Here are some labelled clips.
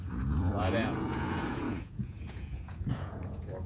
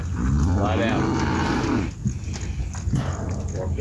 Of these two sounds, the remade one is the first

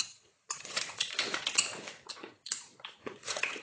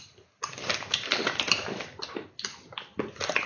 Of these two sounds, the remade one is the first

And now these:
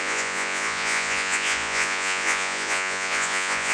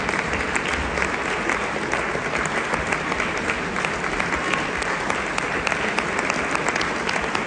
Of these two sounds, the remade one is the first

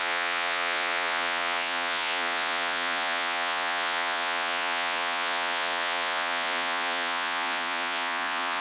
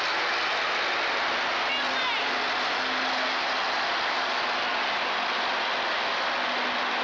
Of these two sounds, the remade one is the first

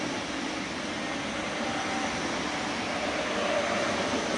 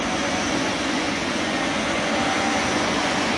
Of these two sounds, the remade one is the second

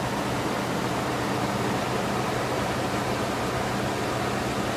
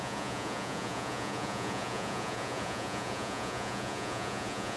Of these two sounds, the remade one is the second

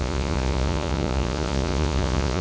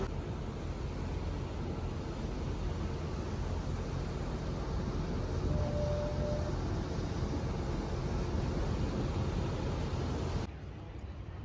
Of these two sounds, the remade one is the first